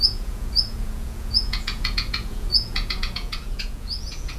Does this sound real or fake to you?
fake